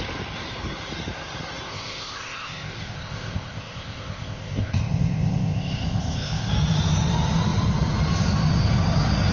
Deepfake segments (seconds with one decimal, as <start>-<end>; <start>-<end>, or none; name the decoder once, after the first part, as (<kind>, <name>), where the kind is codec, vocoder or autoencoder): 1.7-6.5 (codec, ZipCodec)